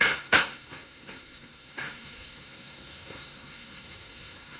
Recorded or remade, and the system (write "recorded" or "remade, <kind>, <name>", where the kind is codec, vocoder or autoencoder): remade, codec, SNAC